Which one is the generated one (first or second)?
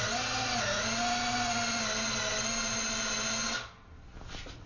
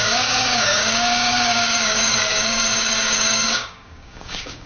second